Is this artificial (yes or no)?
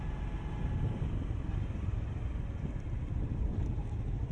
no